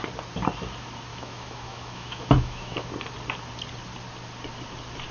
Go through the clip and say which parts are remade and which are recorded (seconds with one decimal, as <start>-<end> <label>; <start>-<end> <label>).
0.0-1.1 recorded; 1.1-2.9 remade; 2.9-5.1 recorded